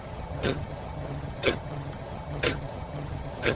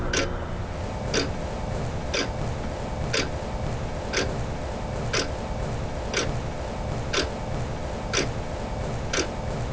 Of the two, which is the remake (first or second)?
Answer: first